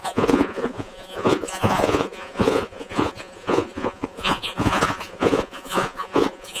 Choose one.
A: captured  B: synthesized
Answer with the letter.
B